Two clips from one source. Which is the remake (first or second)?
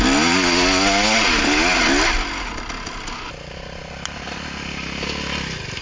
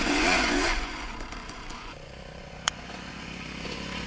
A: second